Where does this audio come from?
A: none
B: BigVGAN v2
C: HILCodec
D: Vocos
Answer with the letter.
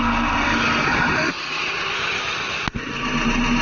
A